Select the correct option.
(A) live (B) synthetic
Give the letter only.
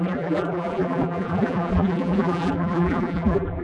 B